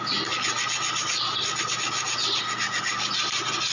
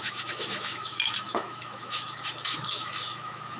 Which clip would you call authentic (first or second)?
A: first